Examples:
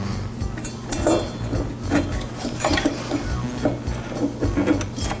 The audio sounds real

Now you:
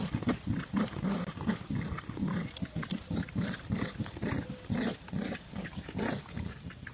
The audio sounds real